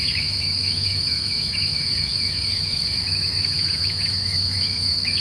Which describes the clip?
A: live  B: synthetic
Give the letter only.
B